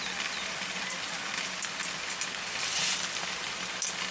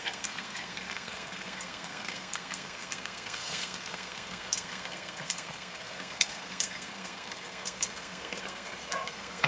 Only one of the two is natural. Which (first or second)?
first